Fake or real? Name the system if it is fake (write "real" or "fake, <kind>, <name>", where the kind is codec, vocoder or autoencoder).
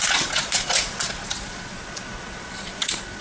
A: fake, vocoder, Vocos